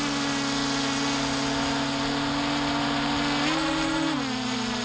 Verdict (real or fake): real